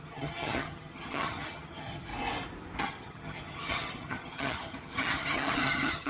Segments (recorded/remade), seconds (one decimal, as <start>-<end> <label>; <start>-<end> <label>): 0.0-2.1 remade; 2.1-2.8 recorded; 2.8-6.1 remade